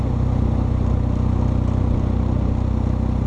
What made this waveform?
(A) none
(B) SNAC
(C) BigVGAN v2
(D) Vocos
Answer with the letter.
A